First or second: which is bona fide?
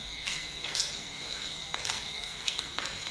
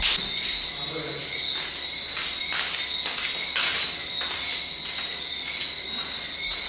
second